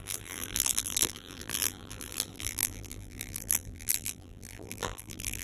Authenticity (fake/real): fake